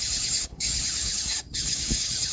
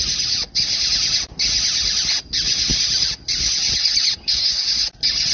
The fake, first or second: first